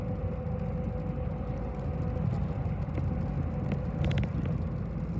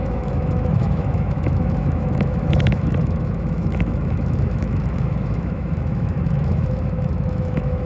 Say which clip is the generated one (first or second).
second